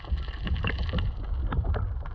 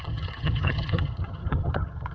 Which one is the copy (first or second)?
second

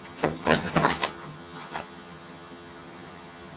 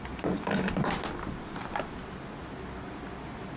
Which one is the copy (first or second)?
first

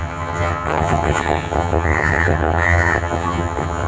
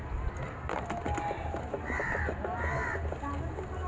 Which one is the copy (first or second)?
first